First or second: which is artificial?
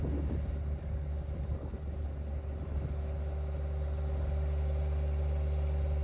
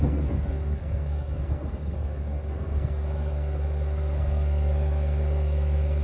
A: second